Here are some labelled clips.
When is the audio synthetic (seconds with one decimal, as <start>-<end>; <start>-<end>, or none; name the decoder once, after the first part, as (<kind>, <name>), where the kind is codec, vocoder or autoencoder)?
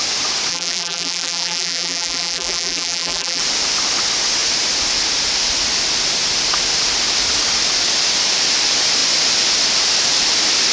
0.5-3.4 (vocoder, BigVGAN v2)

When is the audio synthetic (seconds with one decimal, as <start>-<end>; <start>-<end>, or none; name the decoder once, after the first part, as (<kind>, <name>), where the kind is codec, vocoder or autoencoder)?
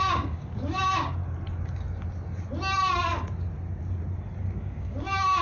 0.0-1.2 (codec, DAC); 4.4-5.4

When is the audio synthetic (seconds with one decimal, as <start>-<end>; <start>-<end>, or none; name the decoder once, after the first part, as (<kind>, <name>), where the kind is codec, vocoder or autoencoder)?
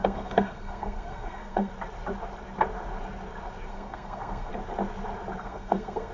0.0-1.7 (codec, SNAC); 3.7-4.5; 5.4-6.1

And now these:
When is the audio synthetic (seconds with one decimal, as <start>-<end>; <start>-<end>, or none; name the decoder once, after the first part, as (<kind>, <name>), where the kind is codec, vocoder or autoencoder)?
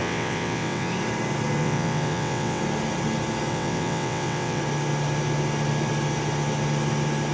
0.0-0.9 (vocoder, WaveNeXt); 1.6-2.6; 3.5-4.6